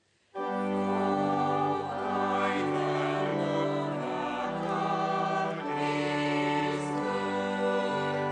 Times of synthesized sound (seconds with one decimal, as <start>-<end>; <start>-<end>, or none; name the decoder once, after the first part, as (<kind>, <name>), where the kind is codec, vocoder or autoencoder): none